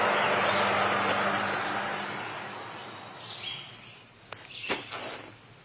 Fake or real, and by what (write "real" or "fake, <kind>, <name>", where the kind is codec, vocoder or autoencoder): real